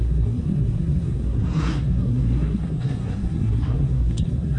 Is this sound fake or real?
fake